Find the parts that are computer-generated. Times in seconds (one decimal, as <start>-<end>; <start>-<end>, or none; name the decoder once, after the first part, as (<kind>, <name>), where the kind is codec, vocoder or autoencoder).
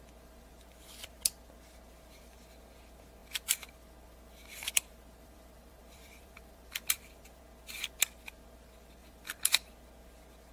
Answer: 3.2-7.4 (vocoder, BigVGAN v2); 9.0-9.5